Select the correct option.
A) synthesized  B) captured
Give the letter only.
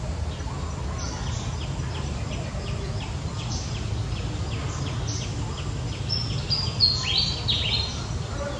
B